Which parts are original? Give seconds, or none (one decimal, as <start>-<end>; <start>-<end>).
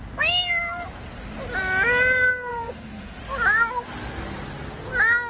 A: 0.0-2.5; 3.2-5.3